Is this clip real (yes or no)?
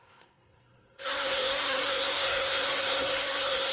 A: no